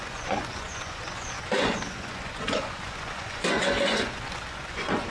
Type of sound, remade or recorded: remade